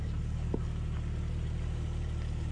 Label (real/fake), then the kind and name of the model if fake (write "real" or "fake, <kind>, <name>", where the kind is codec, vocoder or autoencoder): real